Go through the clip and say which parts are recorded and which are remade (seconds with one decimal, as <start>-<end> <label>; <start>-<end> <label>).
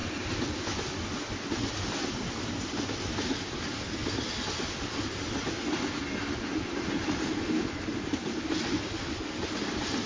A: 0.0-10.1 recorded